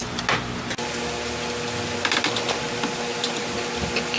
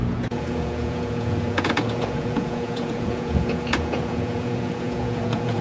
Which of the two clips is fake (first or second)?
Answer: second